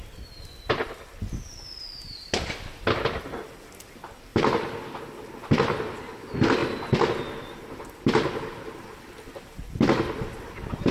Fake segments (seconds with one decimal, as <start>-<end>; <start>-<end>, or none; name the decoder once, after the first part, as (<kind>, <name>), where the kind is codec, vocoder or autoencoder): none